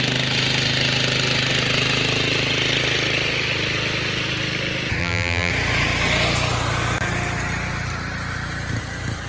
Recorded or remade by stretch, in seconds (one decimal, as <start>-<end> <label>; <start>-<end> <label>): 0.0-5.0 recorded; 5.0-5.5 remade; 5.5-9.3 recorded